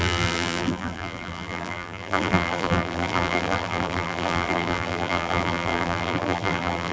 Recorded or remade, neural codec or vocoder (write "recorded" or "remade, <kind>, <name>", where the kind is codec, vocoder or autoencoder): remade, vocoder, BigVGAN v2